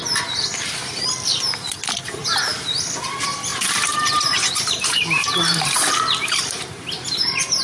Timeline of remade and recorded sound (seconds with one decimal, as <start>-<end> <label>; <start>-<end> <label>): 0.0-3.5 recorded; 3.5-6.4 remade; 6.4-7.6 recorded